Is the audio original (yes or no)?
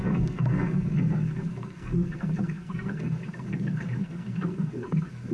no